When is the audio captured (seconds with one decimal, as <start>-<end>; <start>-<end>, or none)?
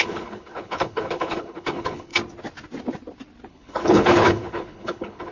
2.1-3.5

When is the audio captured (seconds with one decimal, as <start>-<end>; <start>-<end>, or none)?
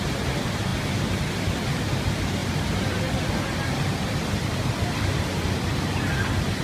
0.0-6.6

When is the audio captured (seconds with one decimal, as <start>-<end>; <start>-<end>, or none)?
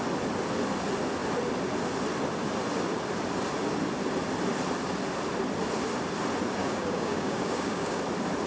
0.0-6.6; 8.0-8.5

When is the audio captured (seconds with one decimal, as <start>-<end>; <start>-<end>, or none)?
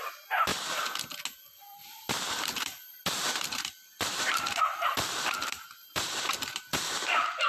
0.5-1.4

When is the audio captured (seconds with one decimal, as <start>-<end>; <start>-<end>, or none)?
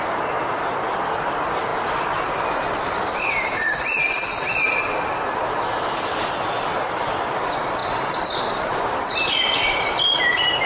1.7-3.1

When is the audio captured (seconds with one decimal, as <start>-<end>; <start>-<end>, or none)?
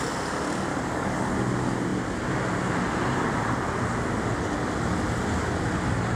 0.0-0.7; 1.3-6.2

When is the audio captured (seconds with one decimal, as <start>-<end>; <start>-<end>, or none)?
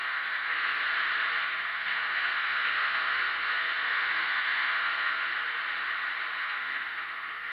0.8-1.4; 5.3-6.4